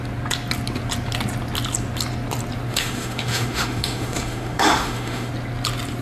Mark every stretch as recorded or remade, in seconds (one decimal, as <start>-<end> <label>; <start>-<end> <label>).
0.0-2.7 recorded; 2.7-5.3 remade; 5.3-6.0 recorded

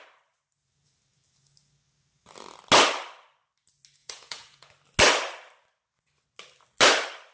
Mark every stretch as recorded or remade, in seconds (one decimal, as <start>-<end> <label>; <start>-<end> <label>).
0.0-4.0 recorded; 4.0-4.7 remade; 4.7-7.3 recorded

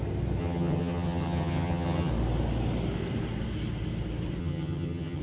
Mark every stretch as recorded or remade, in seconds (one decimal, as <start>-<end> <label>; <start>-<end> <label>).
0.0-0.4 recorded; 0.4-2.1 remade; 2.1-4.4 recorded; 4.4-5.2 remade

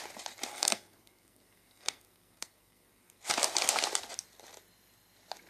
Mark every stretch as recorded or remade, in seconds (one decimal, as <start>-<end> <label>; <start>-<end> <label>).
0.0-0.5 recorded; 0.5-3.2 remade; 3.2-5.5 recorded

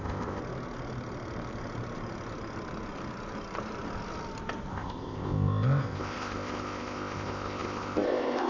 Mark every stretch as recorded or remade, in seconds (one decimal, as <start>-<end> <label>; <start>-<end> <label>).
0.0-0.4 remade; 0.4-4.7 recorded; 4.7-8.5 remade

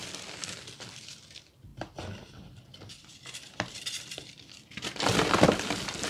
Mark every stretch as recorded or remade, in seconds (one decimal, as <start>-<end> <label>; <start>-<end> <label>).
0.0-6.1 recorded

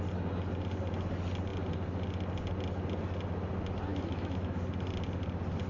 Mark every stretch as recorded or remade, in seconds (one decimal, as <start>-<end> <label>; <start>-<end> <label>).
0.0-3.9 recorded; 3.9-4.6 remade; 4.6-5.7 recorded

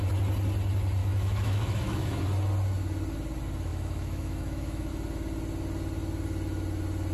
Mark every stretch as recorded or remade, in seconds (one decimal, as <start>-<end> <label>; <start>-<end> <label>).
0.0-1.0 recorded; 1.0-2.2 remade; 2.2-3.7 recorded; 3.7-4.9 remade; 4.9-7.1 recorded